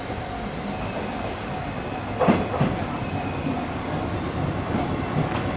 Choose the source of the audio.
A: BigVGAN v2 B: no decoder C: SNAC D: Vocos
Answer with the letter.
B